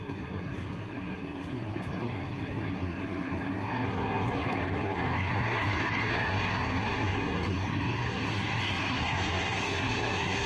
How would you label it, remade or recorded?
remade